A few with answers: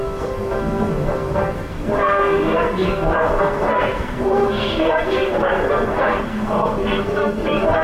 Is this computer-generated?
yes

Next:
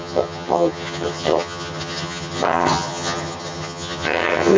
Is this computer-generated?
yes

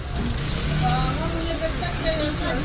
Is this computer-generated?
no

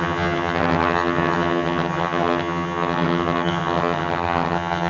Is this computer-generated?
yes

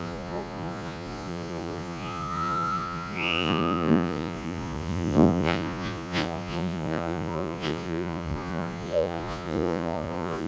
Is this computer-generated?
yes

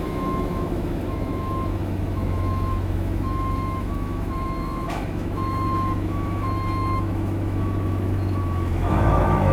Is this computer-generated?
yes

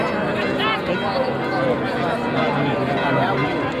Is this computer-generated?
no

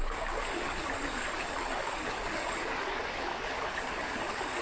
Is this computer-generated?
yes